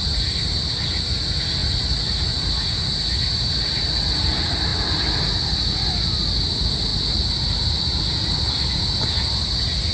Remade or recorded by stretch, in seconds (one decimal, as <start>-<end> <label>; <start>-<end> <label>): 0.0-9.9 recorded